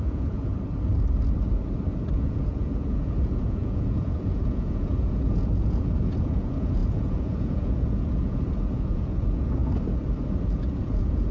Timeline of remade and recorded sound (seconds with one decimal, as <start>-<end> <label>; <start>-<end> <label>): 0.0-0.5 remade; 0.5-2.1 recorded; 2.1-9.6 remade; 9.6-10.7 recorded; 10.7-11.3 remade